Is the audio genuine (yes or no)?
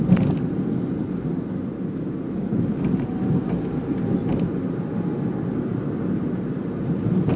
yes